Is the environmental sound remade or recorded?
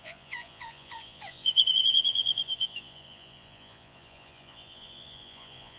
remade